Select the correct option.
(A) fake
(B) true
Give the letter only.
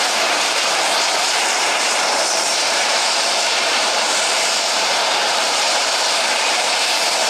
A